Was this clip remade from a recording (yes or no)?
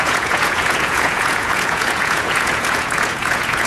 yes